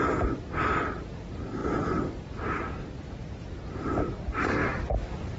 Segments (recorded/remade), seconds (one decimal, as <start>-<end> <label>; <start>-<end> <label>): 0.0-5.4 recorded